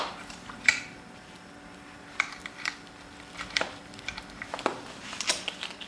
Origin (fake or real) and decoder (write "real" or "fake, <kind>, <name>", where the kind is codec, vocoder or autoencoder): fake, vocoder, BigVGAN v2